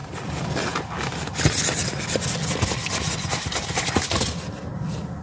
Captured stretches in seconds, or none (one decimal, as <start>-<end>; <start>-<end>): 0.0-5.2